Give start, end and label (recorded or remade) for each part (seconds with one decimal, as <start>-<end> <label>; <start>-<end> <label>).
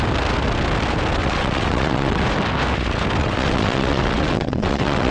0.0-1.2 recorded; 1.2-2.2 remade; 2.2-3.2 recorded; 3.2-5.1 remade